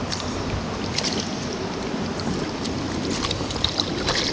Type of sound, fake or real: real